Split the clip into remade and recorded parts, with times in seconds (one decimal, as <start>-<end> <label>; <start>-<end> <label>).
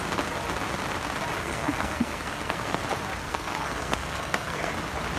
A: 0.0-1.4 recorded; 1.4-2.8 remade; 2.8-3.2 recorded; 3.2-4.7 remade; 4.7-5.2 recorded